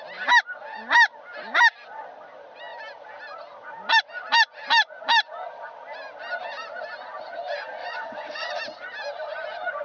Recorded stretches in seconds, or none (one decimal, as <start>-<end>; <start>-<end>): 0.0-7.8; 8.6-9.8